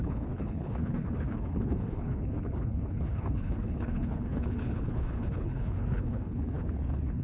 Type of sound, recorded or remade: remade